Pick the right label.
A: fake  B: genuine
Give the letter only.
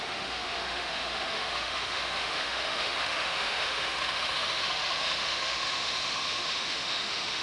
A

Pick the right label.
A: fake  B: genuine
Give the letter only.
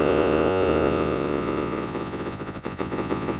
A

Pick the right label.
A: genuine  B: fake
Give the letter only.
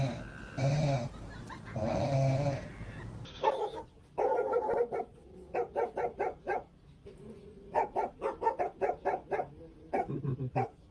A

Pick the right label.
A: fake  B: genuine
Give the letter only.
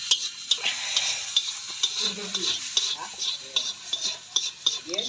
B